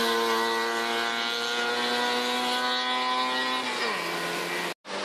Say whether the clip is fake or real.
real